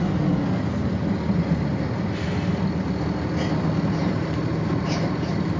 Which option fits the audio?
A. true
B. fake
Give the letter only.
A